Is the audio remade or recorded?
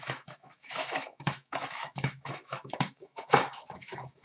remade